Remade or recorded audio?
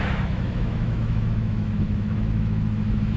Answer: remade